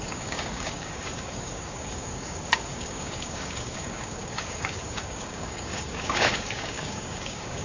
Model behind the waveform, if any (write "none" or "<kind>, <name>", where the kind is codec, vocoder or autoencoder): codec, DAC